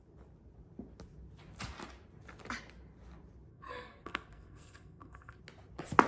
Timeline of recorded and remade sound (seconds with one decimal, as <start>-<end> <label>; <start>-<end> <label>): 0.0-3.5 recorded; 3.5-5.4 remade; 5.4-6.1 recorded